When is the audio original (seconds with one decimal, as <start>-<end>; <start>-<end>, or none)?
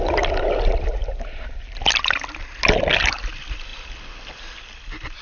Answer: 0.0-5.2